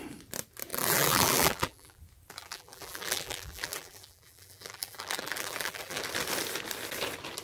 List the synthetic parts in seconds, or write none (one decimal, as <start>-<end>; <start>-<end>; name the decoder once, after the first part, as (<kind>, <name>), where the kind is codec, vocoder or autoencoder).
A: 0.7-2.0 (vocoder, BigVGAN v2); 2.4-6.0